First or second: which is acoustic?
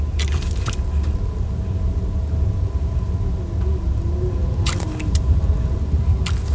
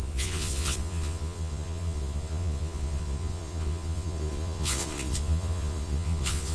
first